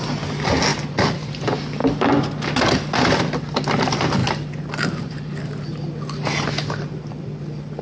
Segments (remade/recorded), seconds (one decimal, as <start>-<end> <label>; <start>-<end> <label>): 0.0-0.7 recorded; 0.7-1.3 remade; 1.3-4.2 recorded; 4.2-5.4 remade; 5.4-7.8 recorded